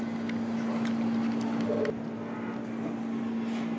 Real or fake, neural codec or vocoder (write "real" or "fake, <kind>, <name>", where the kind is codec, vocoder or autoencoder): real